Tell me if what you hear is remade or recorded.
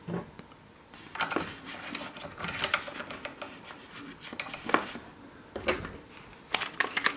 recorded